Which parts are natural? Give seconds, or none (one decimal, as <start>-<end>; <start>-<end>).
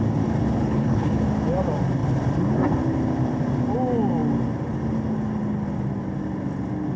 0.0-0.6; 1.1-7.0